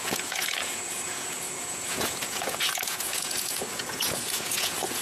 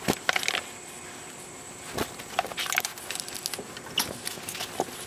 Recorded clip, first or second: second